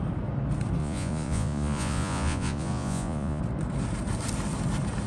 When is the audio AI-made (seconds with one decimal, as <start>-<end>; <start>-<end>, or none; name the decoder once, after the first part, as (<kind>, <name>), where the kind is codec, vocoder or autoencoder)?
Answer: 0.8-3.4 (vocoder, Vocos)